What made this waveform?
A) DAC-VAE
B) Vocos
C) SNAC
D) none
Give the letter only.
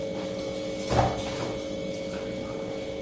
D